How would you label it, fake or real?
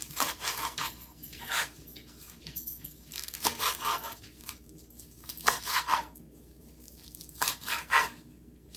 fake